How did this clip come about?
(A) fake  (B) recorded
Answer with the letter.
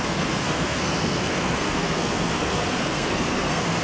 A